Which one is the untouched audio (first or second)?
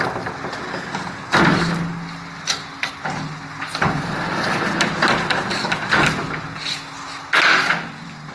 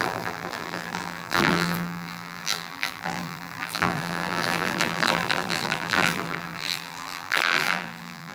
first